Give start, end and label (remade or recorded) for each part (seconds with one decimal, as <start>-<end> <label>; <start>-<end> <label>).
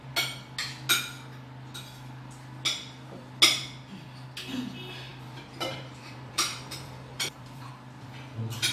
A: 0.0-5.1 recorded; 5.1-7.7 remade; 7.7-8.7 recorded